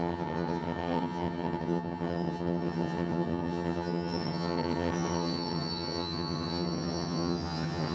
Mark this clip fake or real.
fake